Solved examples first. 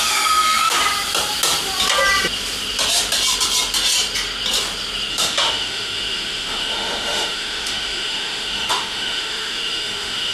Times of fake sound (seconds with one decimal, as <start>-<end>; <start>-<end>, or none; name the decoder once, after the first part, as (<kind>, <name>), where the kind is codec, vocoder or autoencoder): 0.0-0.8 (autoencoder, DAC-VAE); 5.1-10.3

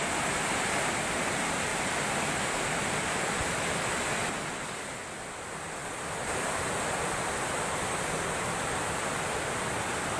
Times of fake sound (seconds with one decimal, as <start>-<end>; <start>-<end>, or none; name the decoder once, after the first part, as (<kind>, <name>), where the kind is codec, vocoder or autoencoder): 0.0-10.2 (vocoder, BigVGAN v2)

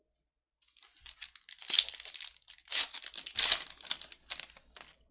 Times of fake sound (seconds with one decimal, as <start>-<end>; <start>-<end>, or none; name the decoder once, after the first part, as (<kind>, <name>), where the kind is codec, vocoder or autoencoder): none